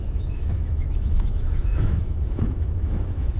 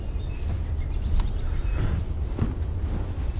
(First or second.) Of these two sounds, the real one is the second